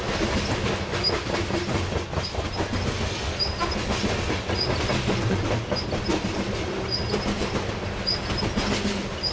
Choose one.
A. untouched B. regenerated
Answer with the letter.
A